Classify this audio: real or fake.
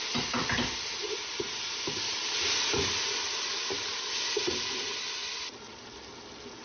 real